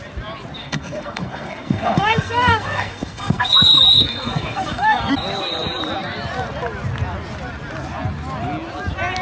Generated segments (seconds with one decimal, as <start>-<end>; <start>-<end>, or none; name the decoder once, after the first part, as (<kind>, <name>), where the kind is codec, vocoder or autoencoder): 0.6-5.1 (codec, SNAC)